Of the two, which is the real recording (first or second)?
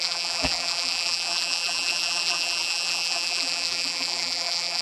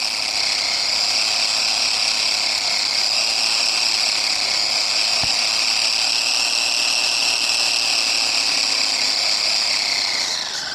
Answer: second